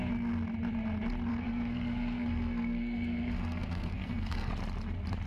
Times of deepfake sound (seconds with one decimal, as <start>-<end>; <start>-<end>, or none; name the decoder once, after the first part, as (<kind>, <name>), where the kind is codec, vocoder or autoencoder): 1.3-4.5 (codec, SNAC)